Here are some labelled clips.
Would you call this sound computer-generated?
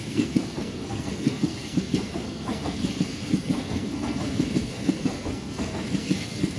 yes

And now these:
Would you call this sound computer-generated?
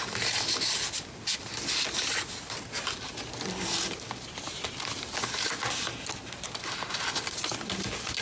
no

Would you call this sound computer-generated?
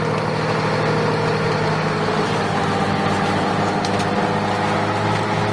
no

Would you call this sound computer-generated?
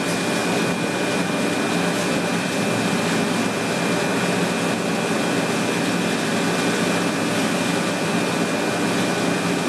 no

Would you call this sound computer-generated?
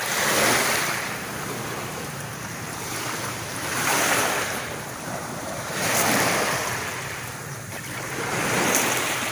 yes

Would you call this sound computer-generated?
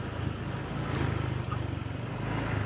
no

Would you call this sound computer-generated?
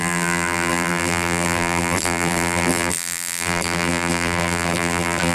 yes